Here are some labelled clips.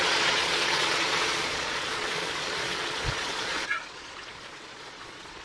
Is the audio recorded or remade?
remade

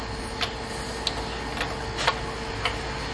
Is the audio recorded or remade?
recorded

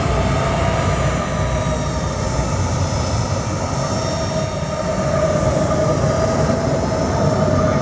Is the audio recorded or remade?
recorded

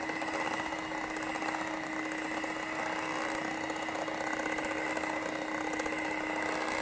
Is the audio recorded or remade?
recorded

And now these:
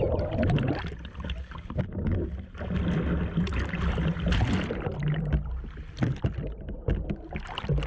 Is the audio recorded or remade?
recorded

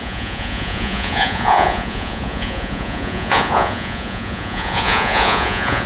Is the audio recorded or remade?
remade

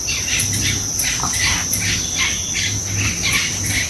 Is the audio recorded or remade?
recorded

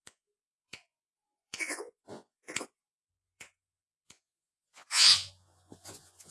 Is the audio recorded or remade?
remade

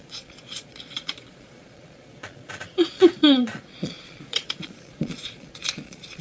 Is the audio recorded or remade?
remade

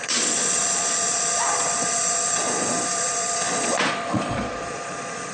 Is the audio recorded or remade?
remade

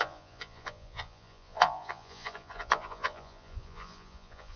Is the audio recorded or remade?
remade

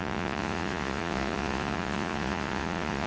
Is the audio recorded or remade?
remade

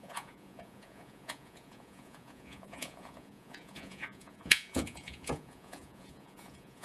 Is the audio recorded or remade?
remade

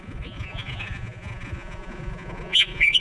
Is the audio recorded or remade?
remade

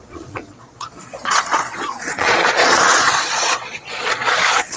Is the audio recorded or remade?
remade